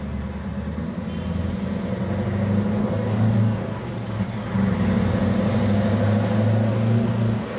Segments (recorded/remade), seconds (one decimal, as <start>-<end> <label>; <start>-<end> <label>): 0.0-2.8 recorded; 2.8-3.8 remade; 3.8-6.7 recorded; 6.7-7.6 remade